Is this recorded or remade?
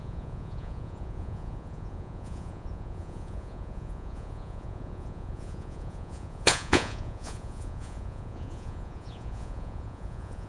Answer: remade